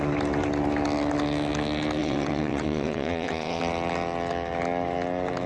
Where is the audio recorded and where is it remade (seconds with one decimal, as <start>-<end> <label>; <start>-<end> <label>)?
0.0-2.0 recorded; 2.0-3.6 remade; 3.6-5.5 recorded

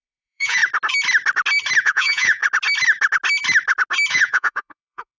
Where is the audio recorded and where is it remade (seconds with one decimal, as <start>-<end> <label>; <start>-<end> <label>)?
0.0-0.6 remade; 0.6-1.8 recorded; 1.8-2.4 remade; 2.4-4.1 recorded; 4.1-5.2 remade

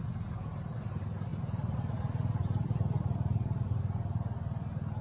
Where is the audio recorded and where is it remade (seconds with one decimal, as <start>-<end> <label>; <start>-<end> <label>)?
0.0-1.3 recorded; 1.3-3.8 remade; 3.8-5.0 recorded

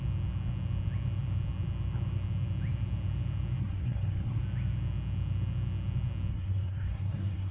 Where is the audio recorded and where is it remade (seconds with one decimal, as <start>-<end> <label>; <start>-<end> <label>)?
0.0-3.6 recorded; 3.6-4.4 remade; 4.4-6.3 recorded; 6.3-7.5 remade

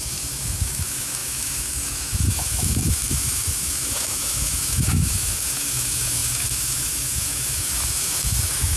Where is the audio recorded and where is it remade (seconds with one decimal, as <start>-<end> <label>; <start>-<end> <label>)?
0.0-8.8 remade